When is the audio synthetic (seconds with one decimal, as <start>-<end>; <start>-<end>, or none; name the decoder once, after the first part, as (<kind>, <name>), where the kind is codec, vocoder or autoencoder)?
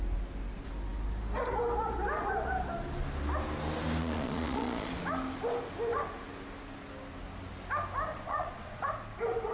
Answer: 4.0-4.9 (vocoder, Vocos); 8.1-8.9